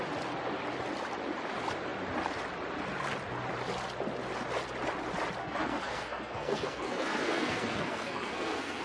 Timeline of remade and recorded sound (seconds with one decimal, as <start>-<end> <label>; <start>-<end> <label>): 0.0-5.4 recorded; 5.4-8.8 remade